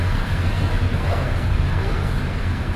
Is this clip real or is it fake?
fake